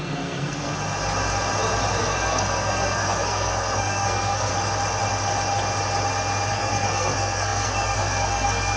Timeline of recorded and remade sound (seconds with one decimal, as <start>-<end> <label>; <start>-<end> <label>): 0.0-0.7 remade; 0.7-2.0 recorded; 2.0-4.5 remade; 4.5-6.5 recorded; 6.5-8.8 remade